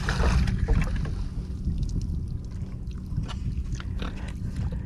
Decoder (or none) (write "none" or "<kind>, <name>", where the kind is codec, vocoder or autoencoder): none